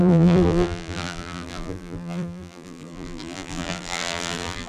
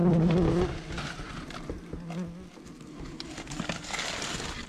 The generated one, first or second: first